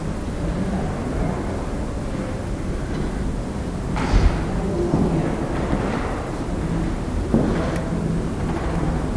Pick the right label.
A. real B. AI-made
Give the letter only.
A